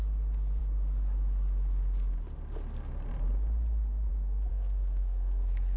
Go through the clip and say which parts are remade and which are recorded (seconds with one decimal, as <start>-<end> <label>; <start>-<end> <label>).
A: 0.0-4.5 recorded; 4.5-5.8 remade